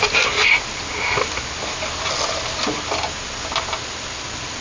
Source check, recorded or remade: recorded